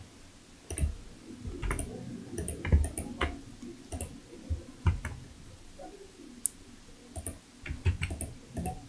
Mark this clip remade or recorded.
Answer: recorded